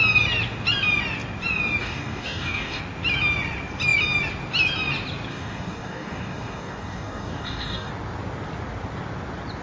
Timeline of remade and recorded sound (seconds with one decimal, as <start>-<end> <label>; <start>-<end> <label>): 0.0-1.8 recorded; 1.8-2.8 remade; 2.8-5.3 recorded; 5.3-7.9 remade; 7.9-9.6 recorded